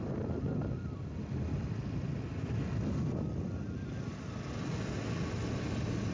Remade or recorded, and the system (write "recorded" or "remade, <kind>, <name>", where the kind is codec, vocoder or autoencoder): recorded